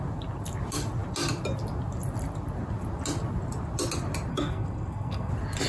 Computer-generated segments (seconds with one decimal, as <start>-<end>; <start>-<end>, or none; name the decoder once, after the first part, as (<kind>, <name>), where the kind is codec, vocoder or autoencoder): 4.3-5.3 (codec, SNAC)